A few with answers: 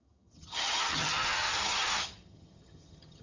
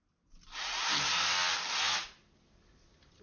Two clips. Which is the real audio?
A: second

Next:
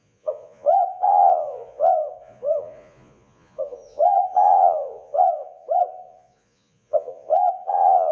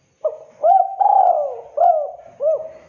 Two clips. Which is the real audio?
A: second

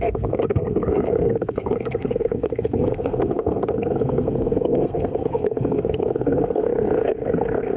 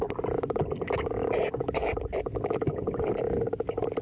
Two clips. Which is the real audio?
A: second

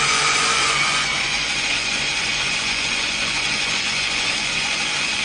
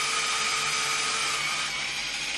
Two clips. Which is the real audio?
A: second